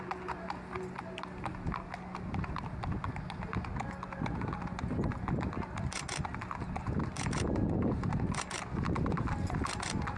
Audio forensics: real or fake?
real